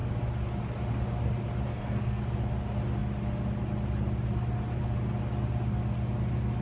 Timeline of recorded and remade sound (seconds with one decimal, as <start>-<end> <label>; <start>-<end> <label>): 0.0-1.7 recorded; 1.7-2.2 remade; 2.2-6.6 recorded